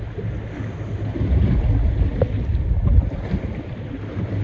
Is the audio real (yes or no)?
yes